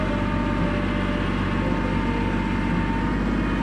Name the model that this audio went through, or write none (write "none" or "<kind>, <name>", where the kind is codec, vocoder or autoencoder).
none